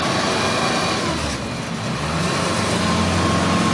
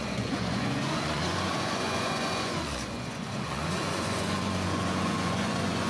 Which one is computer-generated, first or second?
second